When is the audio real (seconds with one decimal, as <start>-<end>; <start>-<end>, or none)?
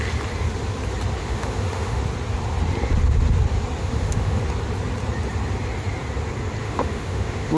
0.0-1.2; 2.0-3.8; 4.4-6.6